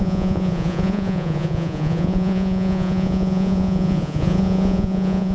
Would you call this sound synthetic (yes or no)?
yes